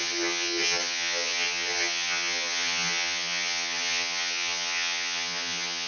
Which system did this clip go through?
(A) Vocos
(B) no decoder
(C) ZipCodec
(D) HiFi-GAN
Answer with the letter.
D